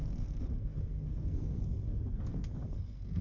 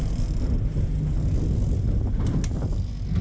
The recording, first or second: second